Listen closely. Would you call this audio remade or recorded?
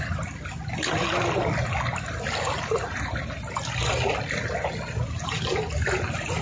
recorded